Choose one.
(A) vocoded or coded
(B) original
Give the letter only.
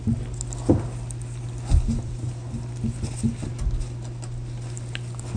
B